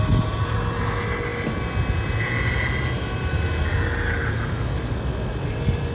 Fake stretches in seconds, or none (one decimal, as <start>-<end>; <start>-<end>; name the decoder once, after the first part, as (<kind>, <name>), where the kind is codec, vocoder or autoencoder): none